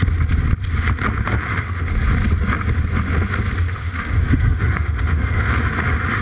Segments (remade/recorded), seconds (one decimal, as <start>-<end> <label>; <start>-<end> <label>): 0.0-1.5 recorded; 1.5-2.0 remade; 2.0-3.7 recorded; 3.7-5.6 remade; 5.6-6.2 recorded